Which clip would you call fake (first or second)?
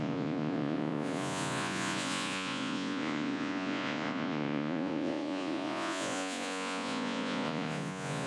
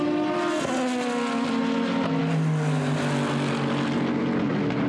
first